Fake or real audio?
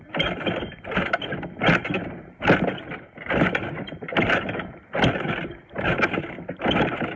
real